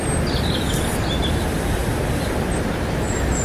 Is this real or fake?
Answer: real